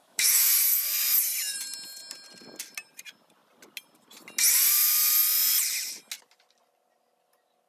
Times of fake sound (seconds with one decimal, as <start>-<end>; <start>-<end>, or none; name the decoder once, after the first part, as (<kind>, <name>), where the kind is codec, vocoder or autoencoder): 0.0-0.5 (autoencoder, DAC-VAE)

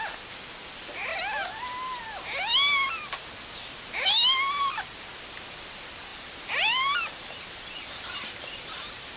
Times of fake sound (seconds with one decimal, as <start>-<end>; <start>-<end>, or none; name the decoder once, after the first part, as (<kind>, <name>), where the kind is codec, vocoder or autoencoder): 6.1-9.2 (vocoder, BigVGAN v2)

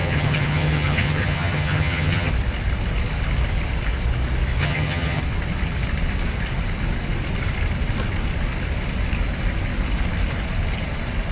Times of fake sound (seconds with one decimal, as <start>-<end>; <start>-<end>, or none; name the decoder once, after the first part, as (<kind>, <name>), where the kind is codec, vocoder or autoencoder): 0.0-2.3 (vocoder, HiFi-GAN); 4.6-5.2

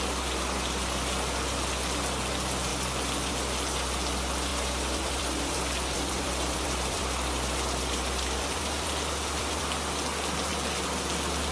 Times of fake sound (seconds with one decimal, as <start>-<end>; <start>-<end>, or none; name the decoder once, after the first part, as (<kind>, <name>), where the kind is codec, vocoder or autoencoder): 4.5-9.6 (vocoder, BigVGAN v2)

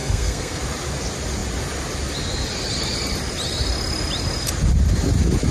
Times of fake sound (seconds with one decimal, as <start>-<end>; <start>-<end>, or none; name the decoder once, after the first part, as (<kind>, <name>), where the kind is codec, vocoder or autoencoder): 0.0-0.6 (codec, SNAC)

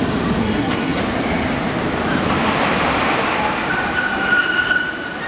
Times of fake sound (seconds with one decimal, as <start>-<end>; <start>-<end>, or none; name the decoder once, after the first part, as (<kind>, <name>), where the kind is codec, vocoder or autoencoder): 0.4-1.0 (codec, SNAC)

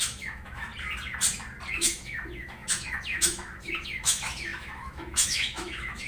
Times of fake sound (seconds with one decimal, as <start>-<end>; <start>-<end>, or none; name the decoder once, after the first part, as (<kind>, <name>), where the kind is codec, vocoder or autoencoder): 0.0-0.7 (autoencoder, DAC-VAE); 1.7-6.1